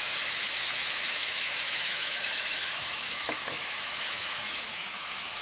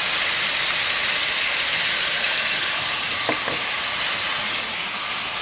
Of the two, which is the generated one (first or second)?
first